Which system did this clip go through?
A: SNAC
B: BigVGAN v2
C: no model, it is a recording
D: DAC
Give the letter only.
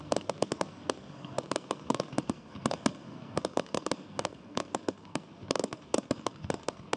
A